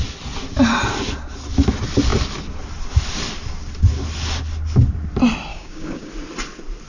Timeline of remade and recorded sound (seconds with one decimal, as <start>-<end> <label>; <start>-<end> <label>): 0.0-5.5 recorded; 5.5-6.1 remade; 6.1-6.9 recorded